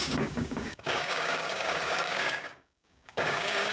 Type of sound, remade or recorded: remade